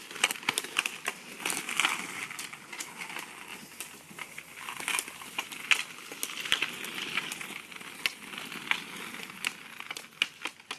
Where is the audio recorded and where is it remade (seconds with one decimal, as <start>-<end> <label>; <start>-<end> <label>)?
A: 0.0-3.5 recorded; 3.5-5.7 remade; 5.7-10.8 recorded